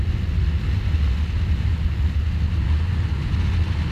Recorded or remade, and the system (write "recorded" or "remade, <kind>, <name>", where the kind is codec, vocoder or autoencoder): recorded